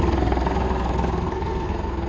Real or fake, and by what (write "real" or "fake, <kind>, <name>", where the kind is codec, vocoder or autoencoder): fake, codec, SNAC